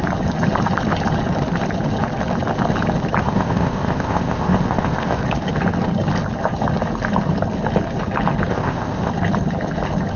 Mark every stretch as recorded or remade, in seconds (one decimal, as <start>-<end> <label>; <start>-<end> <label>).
0.0-3.2 recorded; 3.2-5.2 remade; 5.2-8.5 recorded; 8.5-9.1 remade; 9.1-10.2 recorded